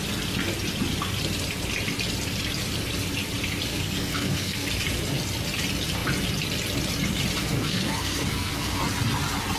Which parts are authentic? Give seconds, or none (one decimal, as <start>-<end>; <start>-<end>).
0.0-3.7; 4.7-7.4; 8.8-9.6